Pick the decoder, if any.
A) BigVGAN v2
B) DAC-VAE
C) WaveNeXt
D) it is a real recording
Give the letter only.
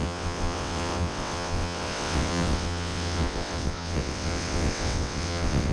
C